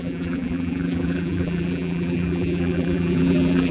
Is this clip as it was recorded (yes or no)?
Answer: no